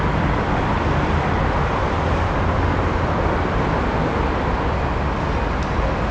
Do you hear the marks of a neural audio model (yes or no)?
no